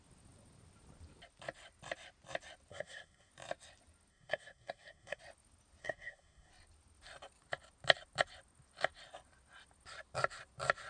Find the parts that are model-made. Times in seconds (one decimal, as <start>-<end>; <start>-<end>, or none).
2.7-3.3; 4.1-5.2; 5.8-6.5